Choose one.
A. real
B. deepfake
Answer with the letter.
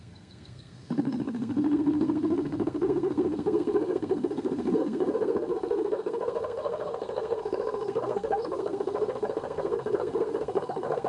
B